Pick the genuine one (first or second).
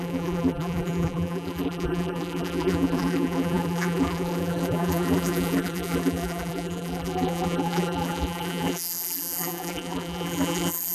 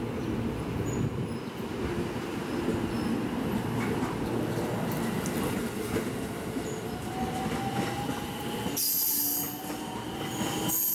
second